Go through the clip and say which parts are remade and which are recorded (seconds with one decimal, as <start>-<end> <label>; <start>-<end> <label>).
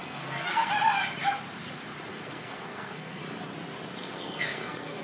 0.0-0.7 remade; 0.7-2.1 recorded; 2.1-3.2 remade; 3.2-4.0 recorded; 4.0-5.0 remade